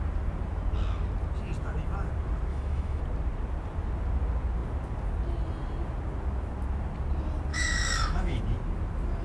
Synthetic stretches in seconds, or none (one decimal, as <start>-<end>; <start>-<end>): 2.5-3.0; 7.5-8.4